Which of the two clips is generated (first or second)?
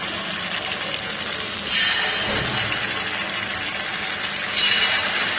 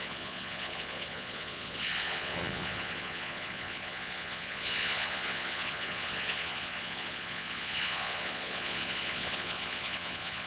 second